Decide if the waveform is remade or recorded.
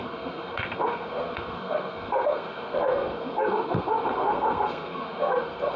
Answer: remade